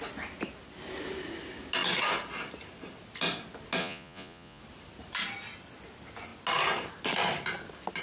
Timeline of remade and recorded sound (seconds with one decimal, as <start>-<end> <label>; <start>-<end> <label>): 0.0-3.8 recorded; 3.8-4.6 remade; 4.6-8.0 recorded